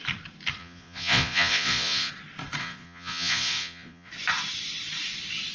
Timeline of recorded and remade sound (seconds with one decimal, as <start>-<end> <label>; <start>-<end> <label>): 0.0-0.6 recorded; 0.6-2.1 remade; 2.1-2.6 recorded; 2.6-4.1 remade; 4.1-5.5 recorded